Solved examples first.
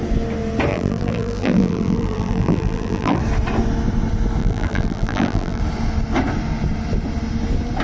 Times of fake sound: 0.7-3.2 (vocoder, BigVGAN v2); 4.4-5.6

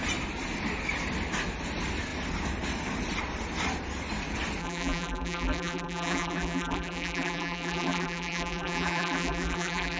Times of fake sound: 4.6-10.0 (vocoder, BigVGAN v2)

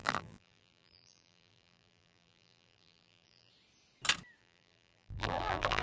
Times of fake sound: 0.0-3.5 (vocoder, BigVGAN v2); 4.4-5.8